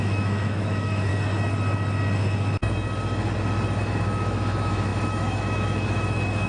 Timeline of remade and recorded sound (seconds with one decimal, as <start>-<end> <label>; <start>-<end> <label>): 0.0-1.1 remade; 1.1-3.8 recorded; 3.8-6.5 remade